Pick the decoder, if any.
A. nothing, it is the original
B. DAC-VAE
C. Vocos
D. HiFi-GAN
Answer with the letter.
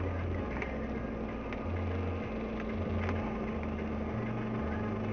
A